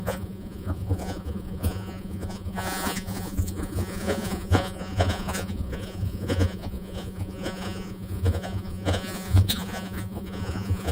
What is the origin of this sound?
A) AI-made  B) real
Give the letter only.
A